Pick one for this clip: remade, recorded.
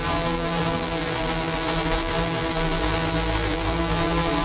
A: remade